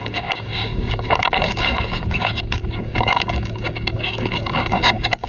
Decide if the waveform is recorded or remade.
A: remade